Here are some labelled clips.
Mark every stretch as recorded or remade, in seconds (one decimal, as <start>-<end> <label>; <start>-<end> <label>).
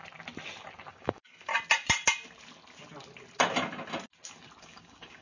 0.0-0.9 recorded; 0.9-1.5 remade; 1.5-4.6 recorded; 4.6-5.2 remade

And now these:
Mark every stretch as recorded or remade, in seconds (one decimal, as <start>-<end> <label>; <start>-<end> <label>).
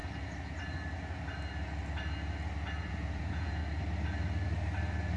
0.0-2.9 recorded; 2.9-3.6 remade; 3.6-5.2 recorded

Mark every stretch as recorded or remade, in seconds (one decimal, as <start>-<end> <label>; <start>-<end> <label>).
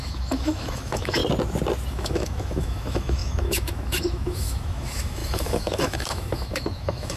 0.0-1.2 remade; 1.2-1.9 recorded; 1.9-7.2 remade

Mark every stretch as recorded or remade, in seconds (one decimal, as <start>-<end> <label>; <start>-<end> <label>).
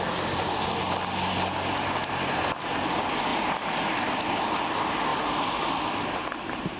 0.0-6.8 recorded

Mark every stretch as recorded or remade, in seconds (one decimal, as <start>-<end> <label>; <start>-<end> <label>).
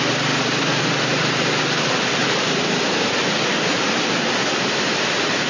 0.0-2.2 recorded; 2.2-5.5 remade